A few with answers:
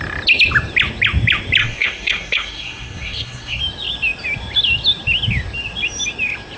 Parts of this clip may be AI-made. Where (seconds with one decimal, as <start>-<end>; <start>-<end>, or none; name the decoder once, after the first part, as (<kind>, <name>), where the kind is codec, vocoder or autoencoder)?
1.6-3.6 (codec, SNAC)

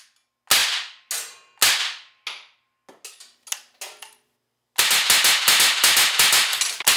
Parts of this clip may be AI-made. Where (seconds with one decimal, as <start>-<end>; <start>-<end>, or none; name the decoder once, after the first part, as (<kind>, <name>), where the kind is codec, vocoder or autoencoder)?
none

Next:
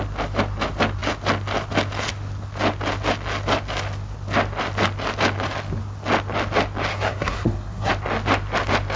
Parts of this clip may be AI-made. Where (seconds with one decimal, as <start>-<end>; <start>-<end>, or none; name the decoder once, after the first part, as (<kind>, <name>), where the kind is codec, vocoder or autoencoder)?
6.9-7.9 (codec, SNAC)

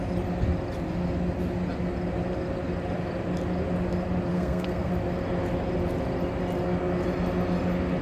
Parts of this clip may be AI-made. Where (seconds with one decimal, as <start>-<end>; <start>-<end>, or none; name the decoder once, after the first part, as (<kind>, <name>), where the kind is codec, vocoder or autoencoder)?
4.3-4.9 (codec, SNAC)

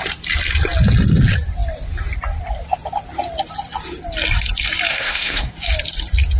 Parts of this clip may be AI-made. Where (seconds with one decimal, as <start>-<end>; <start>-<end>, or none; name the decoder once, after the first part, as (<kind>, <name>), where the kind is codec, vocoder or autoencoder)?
4.9-5.5 (codec, SNAC)